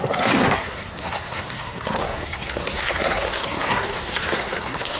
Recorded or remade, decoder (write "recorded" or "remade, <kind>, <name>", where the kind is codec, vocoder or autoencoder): remade, codec, SNAC